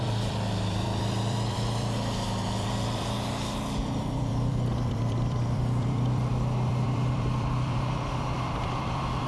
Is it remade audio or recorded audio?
remade